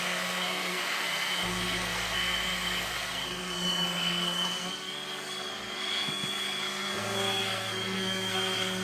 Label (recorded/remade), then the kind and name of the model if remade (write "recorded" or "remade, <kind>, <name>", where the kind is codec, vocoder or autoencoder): remade, codec, SNAC